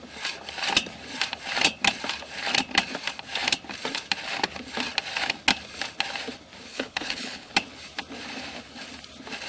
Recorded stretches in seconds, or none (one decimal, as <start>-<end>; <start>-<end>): 0.0-6.7; 7.5-9.5